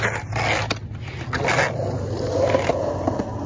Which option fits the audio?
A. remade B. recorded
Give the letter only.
B